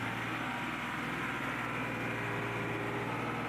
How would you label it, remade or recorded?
recorded